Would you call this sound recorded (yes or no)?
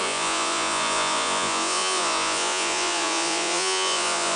no